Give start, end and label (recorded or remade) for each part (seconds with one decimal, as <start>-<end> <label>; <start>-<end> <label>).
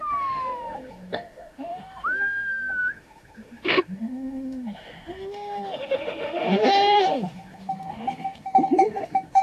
0.0-9.4 remade